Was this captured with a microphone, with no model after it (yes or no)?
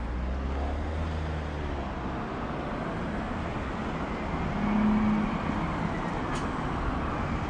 yes